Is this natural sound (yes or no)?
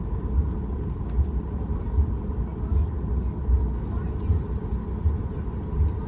yes